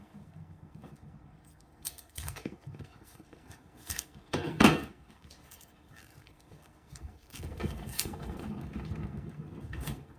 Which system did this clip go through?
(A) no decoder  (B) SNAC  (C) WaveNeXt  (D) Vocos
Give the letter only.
B